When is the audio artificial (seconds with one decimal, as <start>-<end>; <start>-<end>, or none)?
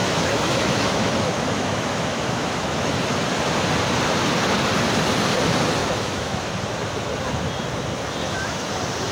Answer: 0.0-3.0; 5.8-6.5; 8.2-8.7